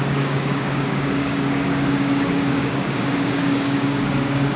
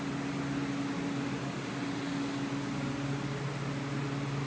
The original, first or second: second